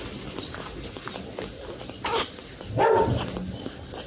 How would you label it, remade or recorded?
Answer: recorded